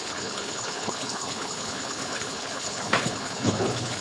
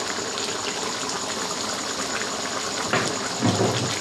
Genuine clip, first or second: second